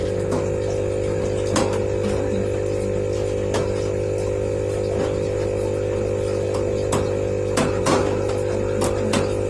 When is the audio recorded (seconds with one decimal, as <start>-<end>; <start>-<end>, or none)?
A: 0.0-9.5